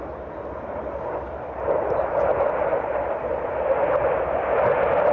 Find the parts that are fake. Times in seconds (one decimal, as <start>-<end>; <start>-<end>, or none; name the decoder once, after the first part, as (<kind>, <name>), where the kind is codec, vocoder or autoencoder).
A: none